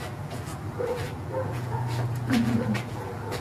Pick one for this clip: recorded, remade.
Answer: remade